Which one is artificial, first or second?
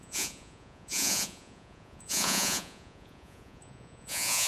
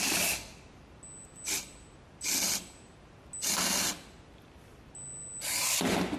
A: first